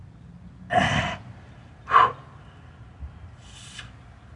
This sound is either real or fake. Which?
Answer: real